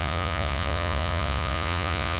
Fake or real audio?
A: fake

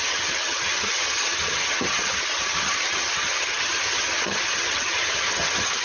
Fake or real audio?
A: fake